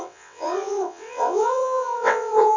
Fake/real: fake